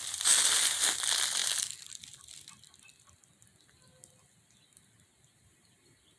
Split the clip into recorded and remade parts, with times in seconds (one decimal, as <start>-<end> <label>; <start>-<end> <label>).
0.0-6.2 recorded